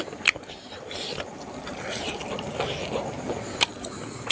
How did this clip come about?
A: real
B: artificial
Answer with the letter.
A